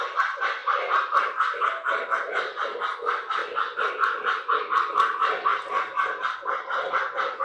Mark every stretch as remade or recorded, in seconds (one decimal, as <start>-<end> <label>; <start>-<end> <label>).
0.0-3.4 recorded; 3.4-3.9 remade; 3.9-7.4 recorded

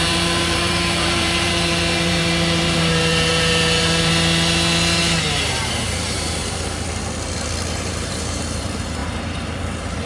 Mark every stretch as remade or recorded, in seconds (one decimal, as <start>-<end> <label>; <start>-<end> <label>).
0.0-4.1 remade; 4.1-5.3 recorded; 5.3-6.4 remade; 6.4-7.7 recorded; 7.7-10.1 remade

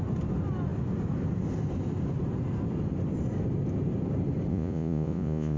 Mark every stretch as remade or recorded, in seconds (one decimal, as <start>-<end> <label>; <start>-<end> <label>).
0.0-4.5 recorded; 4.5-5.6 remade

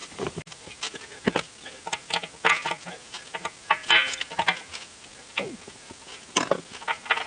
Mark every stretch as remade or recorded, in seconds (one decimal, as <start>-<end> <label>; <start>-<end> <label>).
0.0-7.3 recorded

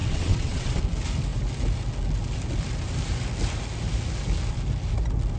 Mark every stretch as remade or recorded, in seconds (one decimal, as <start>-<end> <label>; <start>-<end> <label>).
0.0-0.8 remade; 0.8-5.4 recorded

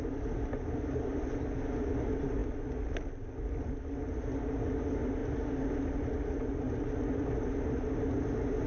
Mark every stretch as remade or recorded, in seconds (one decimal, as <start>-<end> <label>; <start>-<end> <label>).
0.0-8.7 recorded

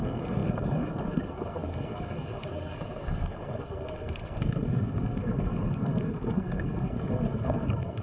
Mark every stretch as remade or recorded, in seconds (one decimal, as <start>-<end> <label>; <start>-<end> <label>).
0.0-8.0 remade

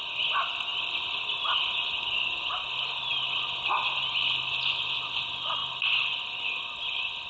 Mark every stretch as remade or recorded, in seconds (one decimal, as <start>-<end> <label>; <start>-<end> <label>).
0.0-7.3 recorded